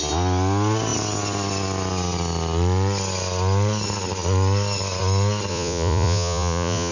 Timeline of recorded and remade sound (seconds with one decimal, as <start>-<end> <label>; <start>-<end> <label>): 0.0-5.5 recorded; 5.5-6.9 remade